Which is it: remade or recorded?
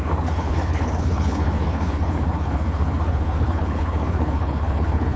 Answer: remade